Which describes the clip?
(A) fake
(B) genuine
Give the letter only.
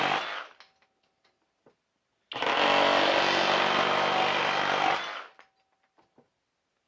B